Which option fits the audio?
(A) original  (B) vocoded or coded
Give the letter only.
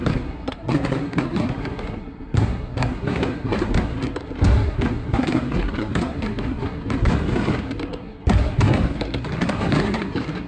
B